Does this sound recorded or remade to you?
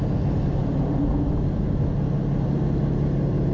recorded